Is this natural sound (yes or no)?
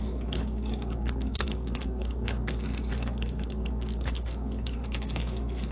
no